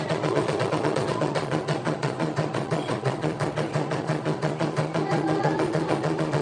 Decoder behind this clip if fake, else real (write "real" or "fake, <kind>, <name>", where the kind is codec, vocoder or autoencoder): fake, vocoder, Vocos